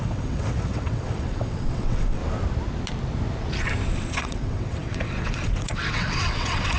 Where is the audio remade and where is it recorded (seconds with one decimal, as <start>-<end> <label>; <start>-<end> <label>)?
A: 0.0-2.2 remade; 2.2-3.9 recorded; 3.9-6.8 remade